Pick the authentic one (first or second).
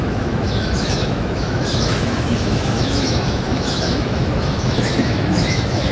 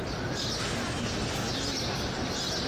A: second